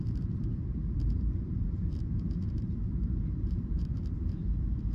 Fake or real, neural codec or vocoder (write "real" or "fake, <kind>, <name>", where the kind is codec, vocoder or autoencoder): fake, vocoder, BigVGAN v2